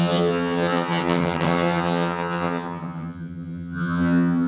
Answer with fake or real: fake